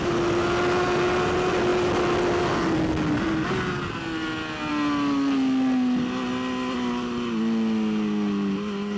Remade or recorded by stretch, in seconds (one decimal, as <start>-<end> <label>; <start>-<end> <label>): 0.0-9.0 recorded